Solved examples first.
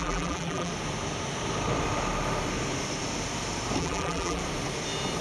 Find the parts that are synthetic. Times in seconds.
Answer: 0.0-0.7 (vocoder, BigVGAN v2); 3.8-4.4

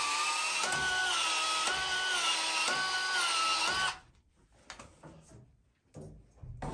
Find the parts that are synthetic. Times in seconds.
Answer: none

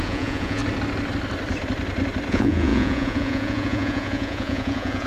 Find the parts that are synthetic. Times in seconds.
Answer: 0.0-0.6 (vocoder, Vocos); 2.3-5.1